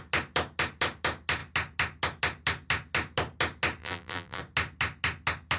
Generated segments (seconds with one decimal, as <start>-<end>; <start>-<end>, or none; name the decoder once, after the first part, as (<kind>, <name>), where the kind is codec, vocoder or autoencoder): 3.8-4.4 (vocoder, BigVGAN v2)